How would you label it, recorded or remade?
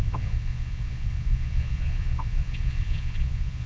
remade